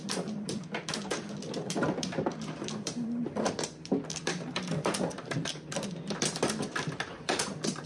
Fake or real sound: fake